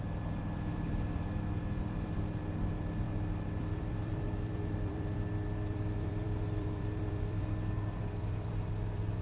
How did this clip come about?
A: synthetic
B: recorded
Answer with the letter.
A